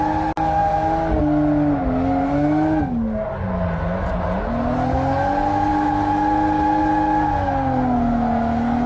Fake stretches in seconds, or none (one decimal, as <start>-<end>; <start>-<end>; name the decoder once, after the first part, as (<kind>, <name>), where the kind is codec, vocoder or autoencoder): none